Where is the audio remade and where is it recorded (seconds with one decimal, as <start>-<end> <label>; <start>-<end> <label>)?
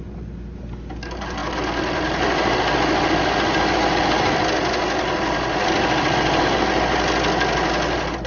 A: 0.0-8.3 recorded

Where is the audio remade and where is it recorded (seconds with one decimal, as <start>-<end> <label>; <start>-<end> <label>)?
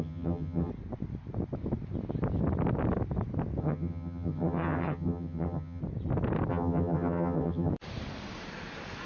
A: 0.0-0.7 remade; 0.7-3.6 recorded; 3.6-5.8 remade; 5.8-6.5 recorded; 6.5-7.7 remade; 7.7-9.1 recorded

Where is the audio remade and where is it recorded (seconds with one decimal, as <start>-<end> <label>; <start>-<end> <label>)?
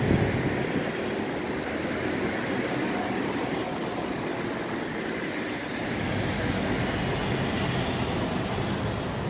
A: 0.0-9.3 recorded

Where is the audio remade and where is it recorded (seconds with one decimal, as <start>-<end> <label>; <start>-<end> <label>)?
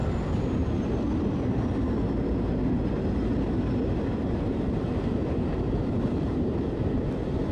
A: 0.0-4.1 recorded; 4.1-6.5 remade; 6.5-7.5 recorded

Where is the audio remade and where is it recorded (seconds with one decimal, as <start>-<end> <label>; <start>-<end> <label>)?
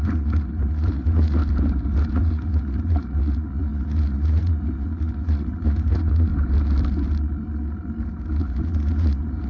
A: 0.0-1.4 remade; 1.4-2.1 recorded; 2.1-6.3 remade; 6.3-8.4 recorded; 8.4-9.5 remade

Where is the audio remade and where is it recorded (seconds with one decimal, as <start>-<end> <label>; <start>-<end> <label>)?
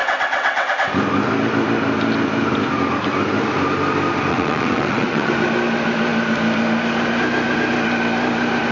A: 0.0-0.7 remade; 0.7-4.3 recorded; 4.3-5.3 remade; 5.3-8.7 recorded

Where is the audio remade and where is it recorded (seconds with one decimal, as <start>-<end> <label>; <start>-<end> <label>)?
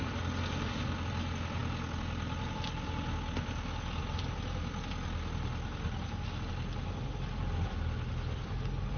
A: 0.0-9.0 recorded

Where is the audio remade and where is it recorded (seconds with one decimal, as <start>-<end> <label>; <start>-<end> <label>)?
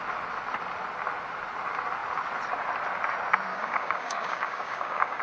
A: 0.0-3.5 recorded; 3.5-5.2 remade